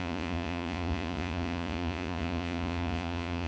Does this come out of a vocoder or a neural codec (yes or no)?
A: yes